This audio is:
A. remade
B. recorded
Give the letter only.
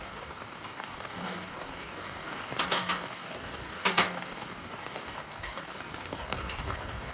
A